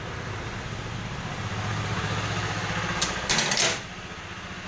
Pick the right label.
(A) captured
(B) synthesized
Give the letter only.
A